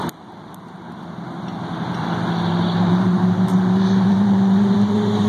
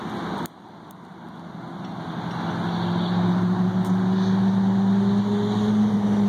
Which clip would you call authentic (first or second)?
second